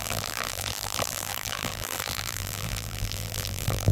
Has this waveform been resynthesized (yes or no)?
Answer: yes